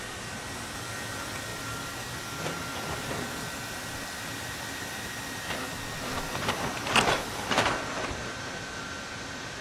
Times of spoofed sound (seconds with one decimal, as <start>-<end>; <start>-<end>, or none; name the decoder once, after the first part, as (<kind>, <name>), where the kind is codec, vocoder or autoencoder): none